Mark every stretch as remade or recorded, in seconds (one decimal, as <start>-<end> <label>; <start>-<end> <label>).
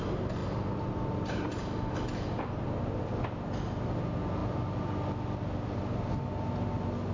0.0-7.1 recorded